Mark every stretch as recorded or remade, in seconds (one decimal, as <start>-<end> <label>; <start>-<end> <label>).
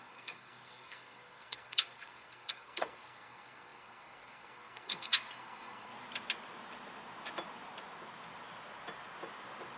0.0-5.9 remade; 5.9-9.8 recorded